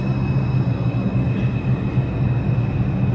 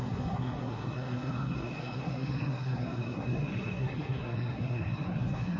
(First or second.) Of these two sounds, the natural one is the first